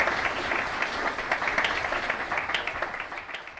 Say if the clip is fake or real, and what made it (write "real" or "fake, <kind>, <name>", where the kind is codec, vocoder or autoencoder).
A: fake, vocoder, BigVGAN v2